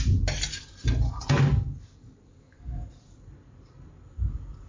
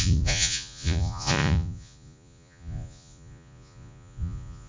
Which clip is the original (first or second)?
first